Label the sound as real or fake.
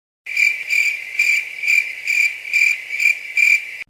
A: real